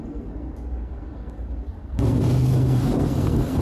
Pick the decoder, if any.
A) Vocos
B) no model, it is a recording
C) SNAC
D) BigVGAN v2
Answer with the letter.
C